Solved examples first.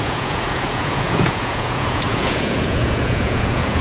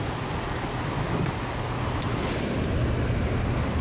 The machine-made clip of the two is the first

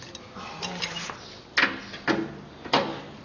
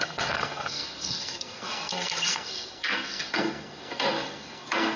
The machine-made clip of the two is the second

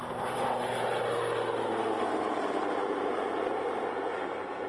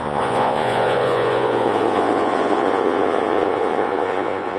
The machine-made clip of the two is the second